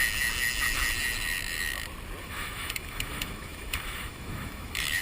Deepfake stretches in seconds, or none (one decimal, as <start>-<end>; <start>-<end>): 2.2-5.0